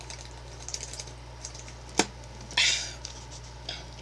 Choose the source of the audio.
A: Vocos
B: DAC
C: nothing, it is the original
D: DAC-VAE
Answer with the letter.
C